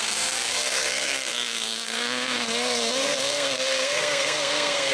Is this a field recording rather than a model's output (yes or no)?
no